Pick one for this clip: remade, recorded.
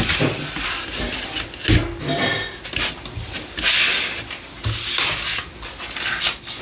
recorded